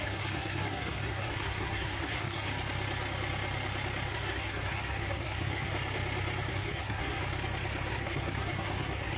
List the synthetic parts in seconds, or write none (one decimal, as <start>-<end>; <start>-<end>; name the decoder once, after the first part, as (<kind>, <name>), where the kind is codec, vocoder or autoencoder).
0.0-2.5 (codec, SNAC); 4.1-5.7; 6.5-7.2; 7.9-9.2